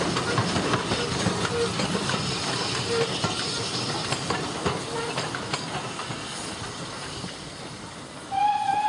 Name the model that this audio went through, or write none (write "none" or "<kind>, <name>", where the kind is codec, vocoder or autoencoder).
none